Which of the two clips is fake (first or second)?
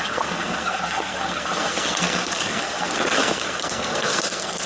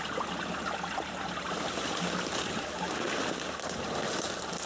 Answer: first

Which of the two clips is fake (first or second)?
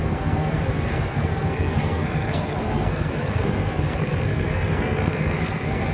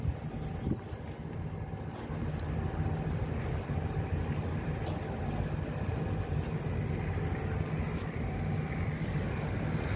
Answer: first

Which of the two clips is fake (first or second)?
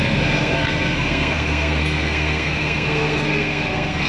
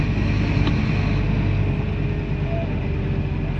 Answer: first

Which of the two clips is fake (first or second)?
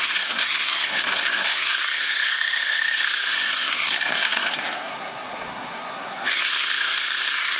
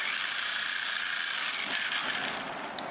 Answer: first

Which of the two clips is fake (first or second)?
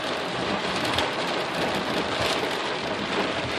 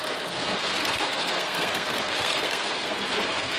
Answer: second